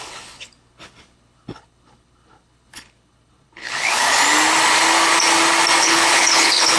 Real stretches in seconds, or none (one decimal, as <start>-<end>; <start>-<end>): 4.2-5.8